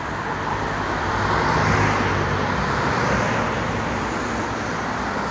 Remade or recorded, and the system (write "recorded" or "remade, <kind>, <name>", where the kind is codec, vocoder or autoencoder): recorded